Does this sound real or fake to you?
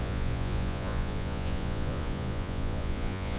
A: fake